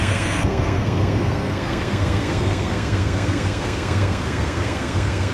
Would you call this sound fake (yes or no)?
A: yes